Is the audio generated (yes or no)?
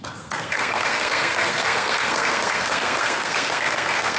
yes